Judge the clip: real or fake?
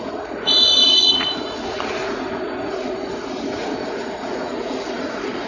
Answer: fake